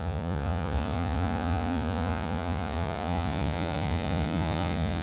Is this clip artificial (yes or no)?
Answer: yes